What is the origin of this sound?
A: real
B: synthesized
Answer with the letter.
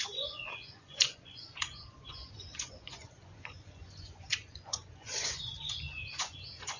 B